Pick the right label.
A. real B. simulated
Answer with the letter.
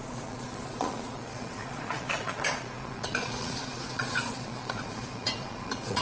B